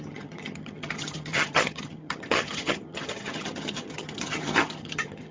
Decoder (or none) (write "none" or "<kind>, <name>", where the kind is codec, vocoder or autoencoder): vocoder, HiFi-GAN